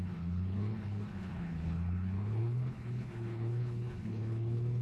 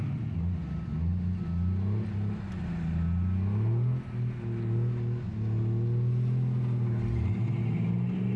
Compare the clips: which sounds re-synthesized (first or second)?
first